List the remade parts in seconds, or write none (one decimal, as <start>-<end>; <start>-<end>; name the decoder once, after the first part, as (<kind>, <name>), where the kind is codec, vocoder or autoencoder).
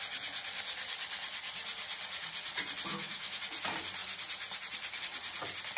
2.9-3.4 (autoencoder, DAC-VAE)